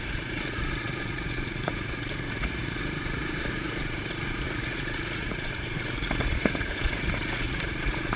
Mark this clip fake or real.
fake